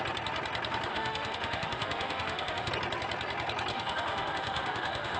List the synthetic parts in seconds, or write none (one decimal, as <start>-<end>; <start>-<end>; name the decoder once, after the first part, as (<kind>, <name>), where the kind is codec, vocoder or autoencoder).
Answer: 0.9-2.7 (autoencoder, DAC-VAE); 3.7-5.2